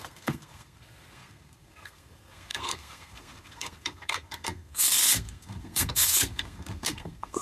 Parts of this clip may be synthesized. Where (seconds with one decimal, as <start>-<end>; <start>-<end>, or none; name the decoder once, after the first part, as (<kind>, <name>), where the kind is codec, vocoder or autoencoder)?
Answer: 0.0-7.4 (codec, SNAC)